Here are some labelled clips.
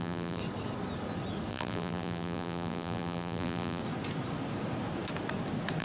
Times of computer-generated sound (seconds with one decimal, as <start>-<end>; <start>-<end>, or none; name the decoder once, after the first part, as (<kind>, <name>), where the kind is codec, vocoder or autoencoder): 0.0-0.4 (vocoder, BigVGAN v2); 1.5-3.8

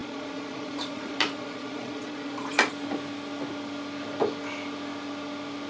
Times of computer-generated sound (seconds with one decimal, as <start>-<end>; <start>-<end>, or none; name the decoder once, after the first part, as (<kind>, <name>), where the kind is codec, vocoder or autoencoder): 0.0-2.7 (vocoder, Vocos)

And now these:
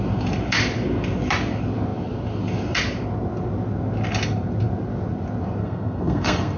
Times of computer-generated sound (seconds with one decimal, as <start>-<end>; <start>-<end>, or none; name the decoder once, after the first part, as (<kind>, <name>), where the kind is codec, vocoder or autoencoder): 5.6-6.6 (codec, SNAC)

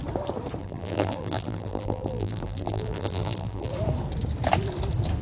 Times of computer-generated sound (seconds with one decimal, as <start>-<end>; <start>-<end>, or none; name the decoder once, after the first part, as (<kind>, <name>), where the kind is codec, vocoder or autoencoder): 0.6-3.7 (vocoder, BigVGAN v2)

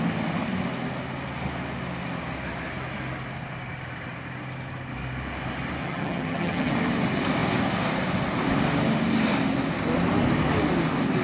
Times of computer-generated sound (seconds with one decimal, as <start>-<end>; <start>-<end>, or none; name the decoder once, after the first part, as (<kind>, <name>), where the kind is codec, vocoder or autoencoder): 5.8-6.7 (vocoder, HiFi-GAN)

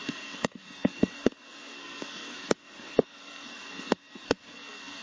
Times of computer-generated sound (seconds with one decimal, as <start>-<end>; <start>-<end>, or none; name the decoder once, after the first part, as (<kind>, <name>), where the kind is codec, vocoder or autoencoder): 0.0-5.0 (codec, SNAC)